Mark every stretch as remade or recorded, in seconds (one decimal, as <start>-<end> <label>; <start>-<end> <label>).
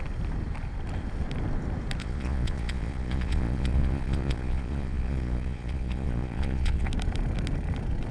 0.0-2.0 recorded; 2.0-6.9 remade; 6.9-8.1 recorded